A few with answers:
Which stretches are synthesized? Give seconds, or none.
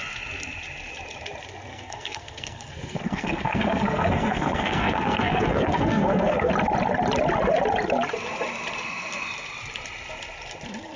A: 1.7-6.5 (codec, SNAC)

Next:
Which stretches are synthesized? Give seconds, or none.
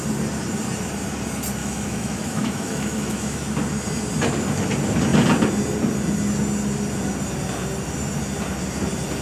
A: 1.6-3.4 (autoencoder, DAC-VAE)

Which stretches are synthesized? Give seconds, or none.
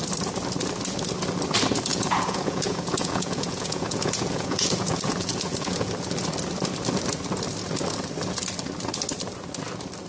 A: 1.9-5.9 (vocoder, Vocos)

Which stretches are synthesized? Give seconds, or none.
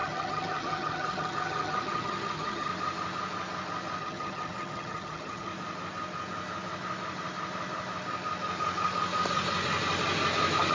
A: 0.0-2.7 (vocoder, HiFi-GAN); 4.0-5.5